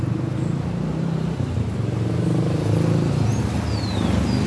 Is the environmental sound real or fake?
real